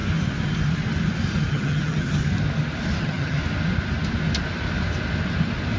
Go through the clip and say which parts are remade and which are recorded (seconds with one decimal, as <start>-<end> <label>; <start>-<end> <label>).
0.0-1.5 recorded; 1.5-2.2 remade; 2.2-3.0 recorded; 3.0-3.4 remade; 3.4-5.8 recorded